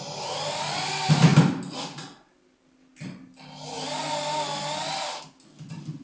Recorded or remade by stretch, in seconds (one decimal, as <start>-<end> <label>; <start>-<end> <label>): 0.0-6.0 recorded